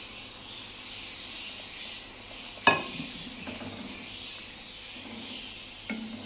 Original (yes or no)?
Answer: yes